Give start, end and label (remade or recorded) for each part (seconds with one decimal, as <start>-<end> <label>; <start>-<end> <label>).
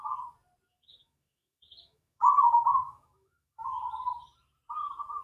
0.0-0.7 recorded; 0.7-3.8 remade; 3.8-5.2 recorded